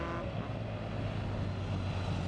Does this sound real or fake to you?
real